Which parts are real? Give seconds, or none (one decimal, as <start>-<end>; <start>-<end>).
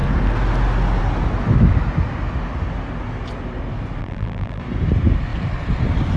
0.0-4.0; 4.6-6.2